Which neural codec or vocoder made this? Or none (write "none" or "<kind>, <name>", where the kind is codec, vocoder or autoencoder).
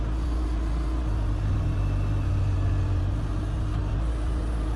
none